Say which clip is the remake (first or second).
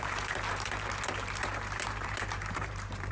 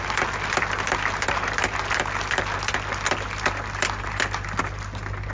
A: first